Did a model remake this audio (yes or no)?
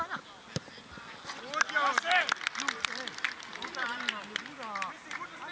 no